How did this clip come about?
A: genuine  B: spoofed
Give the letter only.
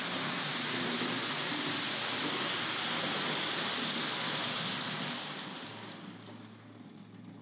A